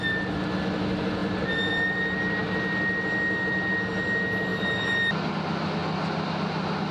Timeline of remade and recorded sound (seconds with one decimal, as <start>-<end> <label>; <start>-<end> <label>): 0.0-6.9 recorded